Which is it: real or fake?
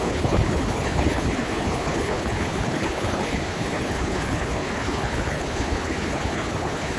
fake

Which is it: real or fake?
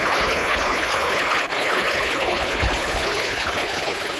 fake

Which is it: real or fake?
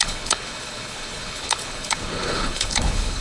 fake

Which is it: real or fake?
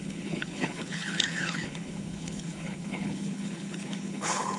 fake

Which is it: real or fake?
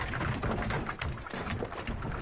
real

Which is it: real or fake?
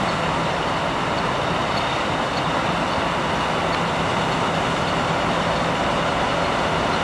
real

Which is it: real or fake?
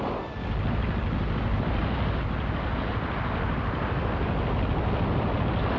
real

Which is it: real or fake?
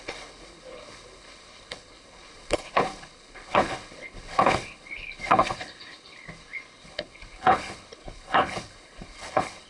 fake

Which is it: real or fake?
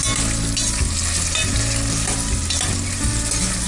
real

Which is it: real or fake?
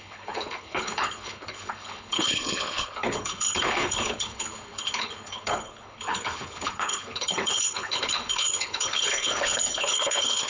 fake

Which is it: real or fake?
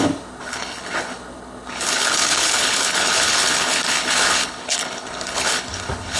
fake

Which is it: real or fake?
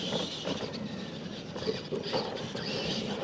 real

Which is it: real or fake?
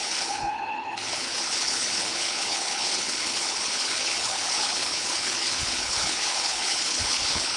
fake